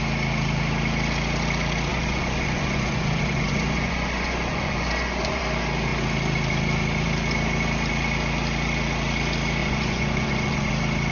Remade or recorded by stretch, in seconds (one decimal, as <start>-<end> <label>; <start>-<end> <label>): 0.0-1.9 recorded; 1.9-5.4 remade; 5.4-9.6 recorded; 9.6-10.7 remade; 10.7-11.1 recorded